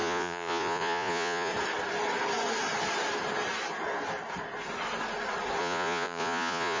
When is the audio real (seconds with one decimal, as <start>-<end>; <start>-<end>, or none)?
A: 1.5-5.6